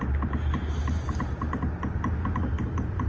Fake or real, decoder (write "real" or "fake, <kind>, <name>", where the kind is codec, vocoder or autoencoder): real